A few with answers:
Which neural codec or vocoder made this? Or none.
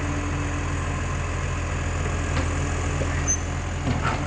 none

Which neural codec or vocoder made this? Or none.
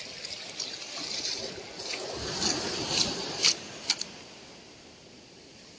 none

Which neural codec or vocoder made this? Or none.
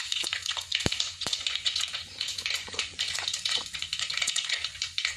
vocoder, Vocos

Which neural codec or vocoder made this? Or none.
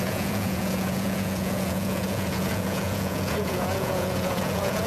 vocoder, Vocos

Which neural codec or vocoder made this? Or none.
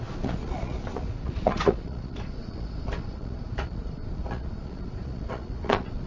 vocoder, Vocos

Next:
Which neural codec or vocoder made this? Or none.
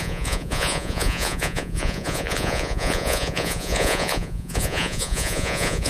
vocoder, Vocos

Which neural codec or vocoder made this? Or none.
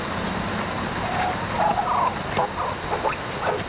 none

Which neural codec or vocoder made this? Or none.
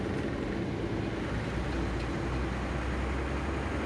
none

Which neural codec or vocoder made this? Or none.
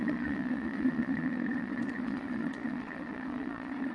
vocoder, Vocos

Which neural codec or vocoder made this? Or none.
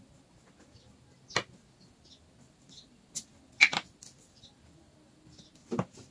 none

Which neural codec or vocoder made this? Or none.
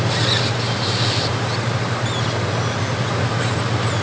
none